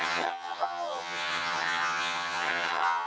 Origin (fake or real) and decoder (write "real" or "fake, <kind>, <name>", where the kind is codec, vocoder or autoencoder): fake, vocoder, HiFi-GAN